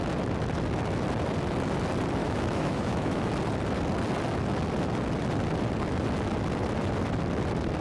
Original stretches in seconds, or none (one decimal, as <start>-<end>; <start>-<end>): 0.0-2.2; 3.3-7.8